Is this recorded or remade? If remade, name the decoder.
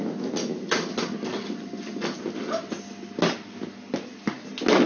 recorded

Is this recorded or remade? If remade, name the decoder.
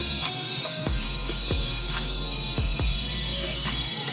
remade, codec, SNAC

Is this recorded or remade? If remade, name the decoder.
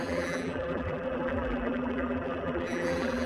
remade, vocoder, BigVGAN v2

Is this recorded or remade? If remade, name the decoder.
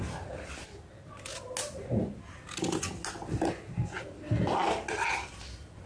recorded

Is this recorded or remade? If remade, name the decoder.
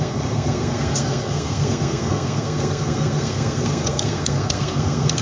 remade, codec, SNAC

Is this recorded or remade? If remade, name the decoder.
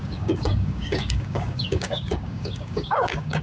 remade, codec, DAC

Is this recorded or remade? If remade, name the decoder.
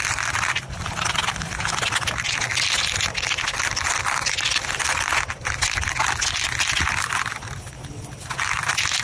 recorded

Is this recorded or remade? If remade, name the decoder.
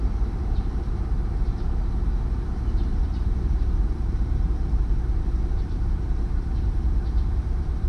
remade, vocoder, BigVGAN v2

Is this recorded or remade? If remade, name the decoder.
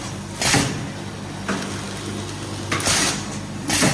recorded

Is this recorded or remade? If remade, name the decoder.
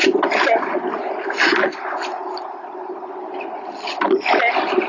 recorded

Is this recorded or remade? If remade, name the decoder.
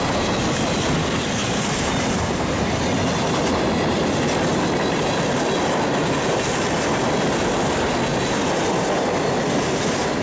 recorded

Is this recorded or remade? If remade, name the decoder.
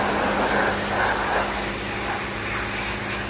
recorded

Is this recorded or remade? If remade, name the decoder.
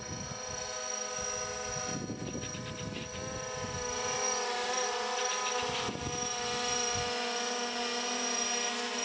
recorded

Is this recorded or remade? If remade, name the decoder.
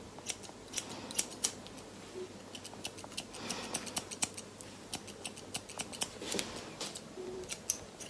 recorded